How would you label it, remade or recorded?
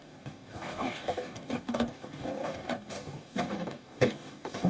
remade